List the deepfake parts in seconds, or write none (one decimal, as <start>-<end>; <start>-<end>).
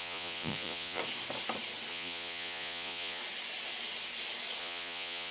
0.0-1.0; 1.9-3.2; 4.6-5.3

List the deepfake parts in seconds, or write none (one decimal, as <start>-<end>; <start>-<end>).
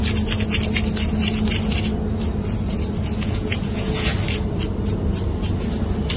3.2-4.1